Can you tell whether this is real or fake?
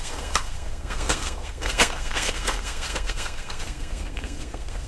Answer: fake